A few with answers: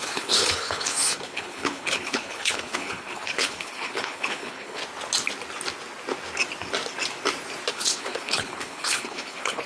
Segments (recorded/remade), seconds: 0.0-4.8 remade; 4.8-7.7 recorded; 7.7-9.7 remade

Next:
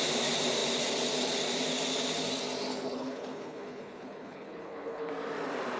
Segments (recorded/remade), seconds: 0.0-2.7 recorded; 2.7-5.1 remade; 5.1-5.8 recorded

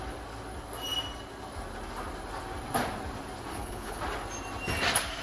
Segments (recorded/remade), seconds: 0.0-3.5 recorded; 3.5-4.0 remade; 4.0-5.2 recorded

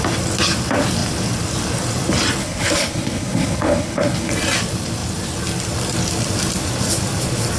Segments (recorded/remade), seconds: 0.0-2.4 recorded; 2.4-4.3 remade; 4.3-7.6 recorded